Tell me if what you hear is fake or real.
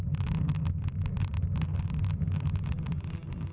real